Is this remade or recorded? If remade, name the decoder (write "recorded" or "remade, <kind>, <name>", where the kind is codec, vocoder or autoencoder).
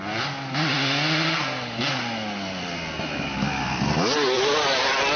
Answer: recorded